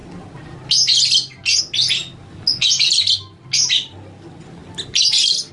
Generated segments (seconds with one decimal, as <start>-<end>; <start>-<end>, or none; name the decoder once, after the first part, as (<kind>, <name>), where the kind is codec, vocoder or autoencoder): none